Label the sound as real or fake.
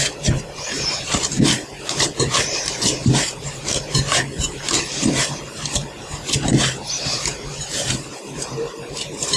fake